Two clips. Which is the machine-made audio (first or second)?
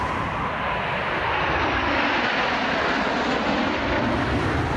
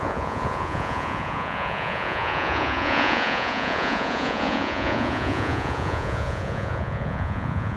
second